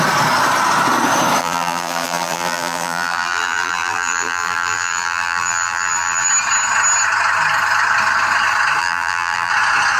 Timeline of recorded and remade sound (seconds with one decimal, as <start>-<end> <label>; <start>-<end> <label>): 0.0-1.4 recorded; 1.4-6.3 remade; 6.3-8.8 recorded; 8.8-9.5 remade; 9.5-10.0 recorded